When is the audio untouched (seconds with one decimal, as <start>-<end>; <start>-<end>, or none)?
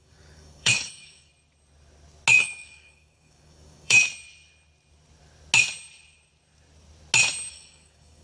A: 1.3-2.4; 4.0-7.5